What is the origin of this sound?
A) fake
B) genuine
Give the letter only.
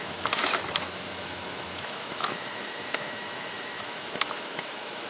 A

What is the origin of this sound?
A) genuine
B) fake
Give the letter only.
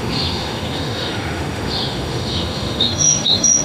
B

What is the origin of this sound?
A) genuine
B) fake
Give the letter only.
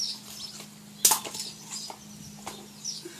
A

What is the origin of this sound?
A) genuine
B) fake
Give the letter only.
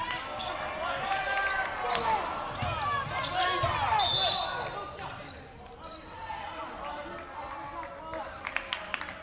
A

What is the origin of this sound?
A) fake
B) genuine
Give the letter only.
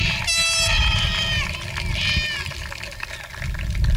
B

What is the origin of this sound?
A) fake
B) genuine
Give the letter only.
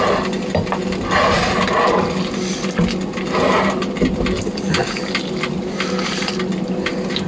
B